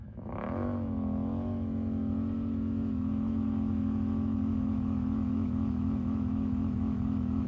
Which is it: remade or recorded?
remade